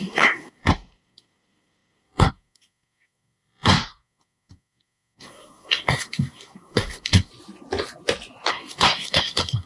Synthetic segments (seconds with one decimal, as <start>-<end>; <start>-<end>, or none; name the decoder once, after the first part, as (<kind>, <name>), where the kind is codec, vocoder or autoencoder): 0.0-7.3 (codec, SNAC); 8.5-9.7